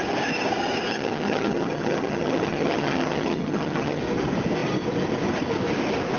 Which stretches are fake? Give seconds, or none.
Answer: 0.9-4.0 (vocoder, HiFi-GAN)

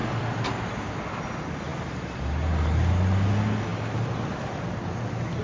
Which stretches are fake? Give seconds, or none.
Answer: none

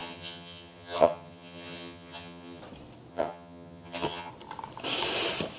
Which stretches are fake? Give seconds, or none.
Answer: 0.0-2.6 (vocoder, HiFi-GAN); 3.1-4.3

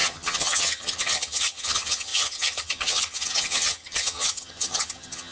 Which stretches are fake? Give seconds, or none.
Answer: 0.0-5.3 (vocoder, HiFi-GAN)